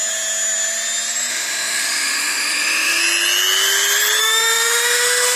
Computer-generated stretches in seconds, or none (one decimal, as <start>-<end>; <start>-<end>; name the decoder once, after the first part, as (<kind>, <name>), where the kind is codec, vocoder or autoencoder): 1.3-3.0 (autoencoder, DAC-VAE); 4.2-5.4